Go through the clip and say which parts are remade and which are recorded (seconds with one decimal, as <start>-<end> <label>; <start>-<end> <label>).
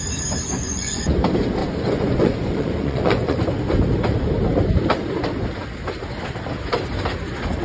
0.0-0.5 recorded; 0.5-1.1 remade; 1.1-1.6 recorded; 1.6-3.4 remade; 3.4-7.6 recorded